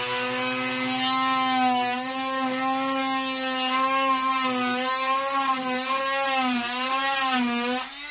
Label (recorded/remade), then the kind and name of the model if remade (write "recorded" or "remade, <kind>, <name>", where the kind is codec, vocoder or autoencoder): recorded